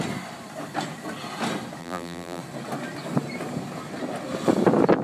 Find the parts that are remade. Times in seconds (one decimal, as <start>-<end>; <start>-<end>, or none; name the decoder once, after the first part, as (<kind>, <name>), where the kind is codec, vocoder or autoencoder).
1.8-2.4 (vocoder, BigVGAN v2)